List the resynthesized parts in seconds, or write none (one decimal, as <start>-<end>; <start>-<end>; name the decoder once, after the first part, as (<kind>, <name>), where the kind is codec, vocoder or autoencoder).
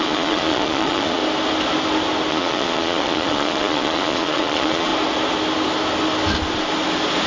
0.0-1.2 (vocoder, Vocos); 2.3-4.9